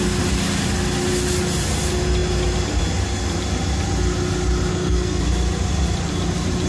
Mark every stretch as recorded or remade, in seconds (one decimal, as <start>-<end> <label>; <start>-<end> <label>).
0.0-4.7 recorded; 4.7-5.2 remade; 5.2-6.7 recorded